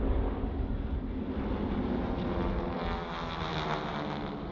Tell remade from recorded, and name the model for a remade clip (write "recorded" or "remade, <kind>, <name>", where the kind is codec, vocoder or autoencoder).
recorded